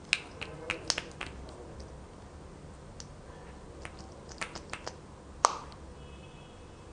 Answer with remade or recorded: recorded